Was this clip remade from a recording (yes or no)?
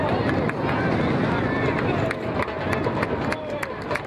no